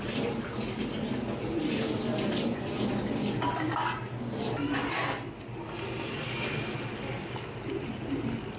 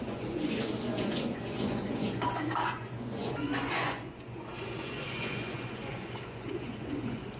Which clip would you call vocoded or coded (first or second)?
second